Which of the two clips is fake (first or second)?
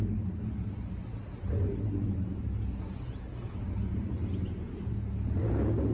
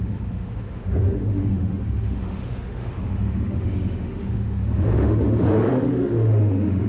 second